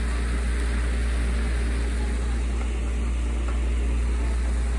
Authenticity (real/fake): real